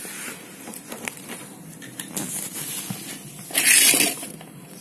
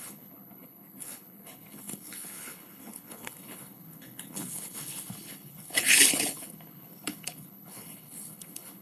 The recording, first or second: first